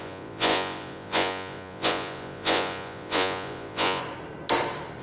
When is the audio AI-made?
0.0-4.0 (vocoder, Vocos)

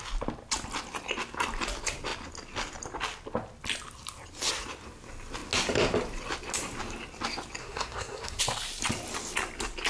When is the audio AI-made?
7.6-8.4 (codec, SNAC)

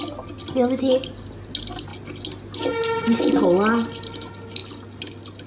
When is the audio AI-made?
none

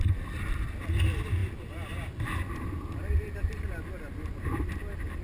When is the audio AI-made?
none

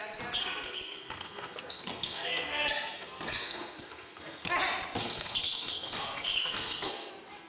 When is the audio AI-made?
0.4-4.5 (codec, SNAC); 5.0-7.1

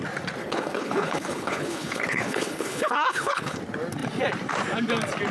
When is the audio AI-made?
0.4-3.6 (codec, HILCodec)

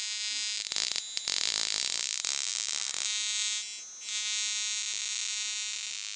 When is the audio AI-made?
none